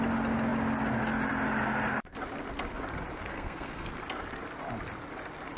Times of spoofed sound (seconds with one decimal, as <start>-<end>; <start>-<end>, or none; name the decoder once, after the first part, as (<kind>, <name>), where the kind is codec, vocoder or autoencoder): 3.3-3.9 (codec, SNAC)